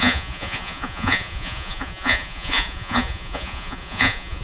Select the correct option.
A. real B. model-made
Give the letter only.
B